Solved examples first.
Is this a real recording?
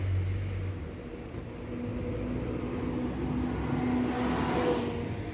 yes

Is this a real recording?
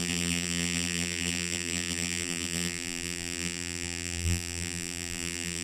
no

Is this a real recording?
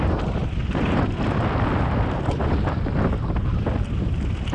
yes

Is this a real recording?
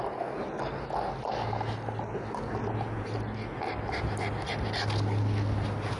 yes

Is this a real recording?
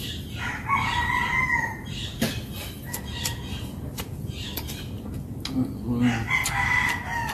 yes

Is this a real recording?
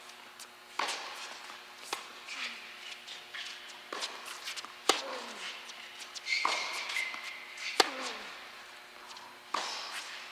yes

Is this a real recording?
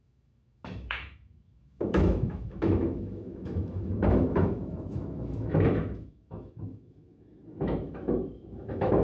no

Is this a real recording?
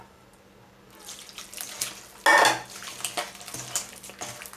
yes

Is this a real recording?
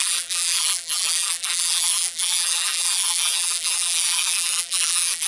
no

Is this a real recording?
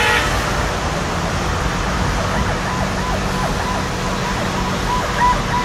yes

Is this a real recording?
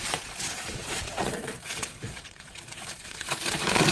no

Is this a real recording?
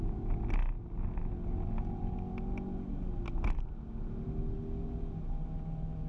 yes